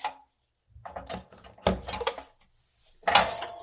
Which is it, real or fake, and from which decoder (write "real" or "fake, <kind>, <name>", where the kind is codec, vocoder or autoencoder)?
real